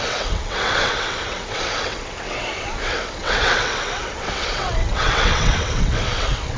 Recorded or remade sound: remade